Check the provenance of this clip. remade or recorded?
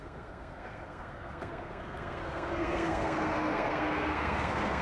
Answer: remade